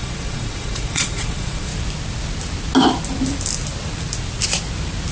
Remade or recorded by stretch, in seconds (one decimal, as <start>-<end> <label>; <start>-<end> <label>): 0.0-1.7 remade; 1.7-5.1 recorded